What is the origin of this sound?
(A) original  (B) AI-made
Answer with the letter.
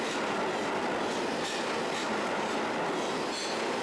A